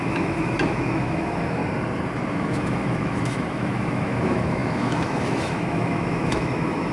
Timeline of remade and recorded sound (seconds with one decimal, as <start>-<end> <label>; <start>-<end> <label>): 0.0-1.6 remade; 1.6-2.3 recorded; 2.3-6.9 remade